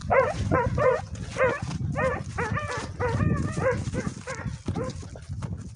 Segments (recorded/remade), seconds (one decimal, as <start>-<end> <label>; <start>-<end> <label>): 0.0-1.0 remade; 1.0-5.8 recorded